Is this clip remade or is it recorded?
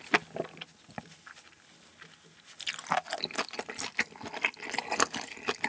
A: recorded